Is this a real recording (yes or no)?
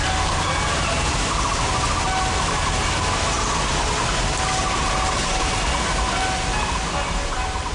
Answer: yes